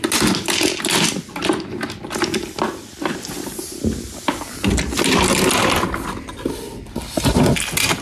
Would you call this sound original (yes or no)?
yes